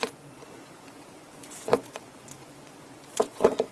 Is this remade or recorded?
remade